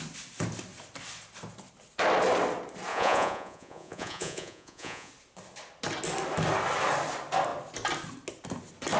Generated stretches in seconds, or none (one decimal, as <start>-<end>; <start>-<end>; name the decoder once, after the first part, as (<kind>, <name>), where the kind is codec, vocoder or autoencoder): 2.9-5.1 (vocoder, Vocos)